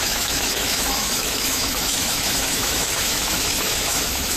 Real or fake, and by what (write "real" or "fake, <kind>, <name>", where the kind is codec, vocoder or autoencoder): fake, autoencoder, DAC-VAE